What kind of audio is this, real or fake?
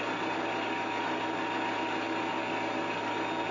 real